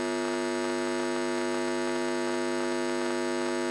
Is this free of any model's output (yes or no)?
yes